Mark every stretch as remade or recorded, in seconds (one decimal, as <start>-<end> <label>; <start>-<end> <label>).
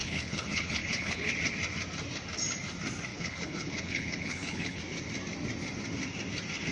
0.0-1.3 remade; 1.3-3.1 recorded; 3.1-4.8 remade; 4.8-6.7 recorded